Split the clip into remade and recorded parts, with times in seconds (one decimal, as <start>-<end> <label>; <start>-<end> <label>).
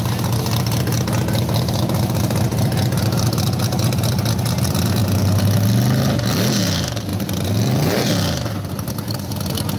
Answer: 0.0-2.5 recorded; 2.5-3.6 remade; 3.6-7.1 recorded; 7.1-8.1 remade; 8.1-9.8 recorded